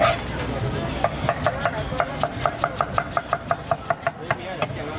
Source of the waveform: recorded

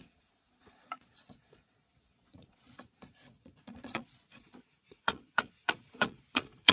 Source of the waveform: remade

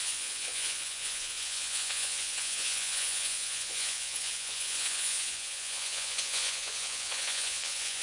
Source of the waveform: remade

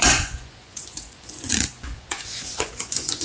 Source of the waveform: remade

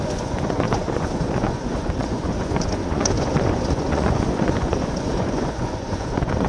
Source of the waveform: remade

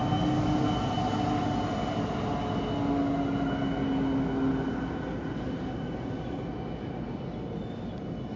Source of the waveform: recorded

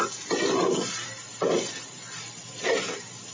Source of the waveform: recorded